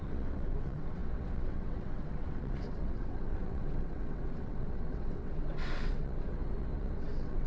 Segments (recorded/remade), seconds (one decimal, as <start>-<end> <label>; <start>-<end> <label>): 0.0-7.5 remade